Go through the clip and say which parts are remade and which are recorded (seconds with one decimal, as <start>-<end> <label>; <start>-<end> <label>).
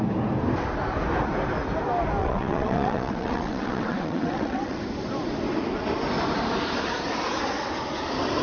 0.0-2.2 recorded; 2.2-4.8 remade; 4.8-8.4 recorded